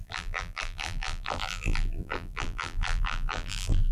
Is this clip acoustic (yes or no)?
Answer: no